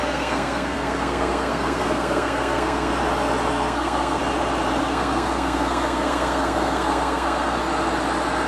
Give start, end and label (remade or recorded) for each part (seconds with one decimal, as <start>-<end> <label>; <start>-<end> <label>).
0.0-2.9 remade; 2.9-3.5 recorded; 3.5-4.2 remade; 4.2-4.8 recorded; 4.8-7.6 remade; 7.6-8.5 recorded